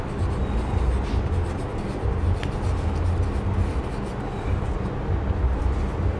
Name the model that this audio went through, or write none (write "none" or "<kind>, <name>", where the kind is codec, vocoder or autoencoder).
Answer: none